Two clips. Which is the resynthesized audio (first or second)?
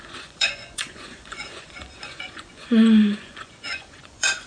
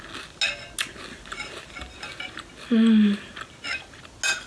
first